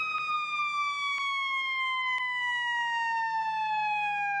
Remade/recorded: recorded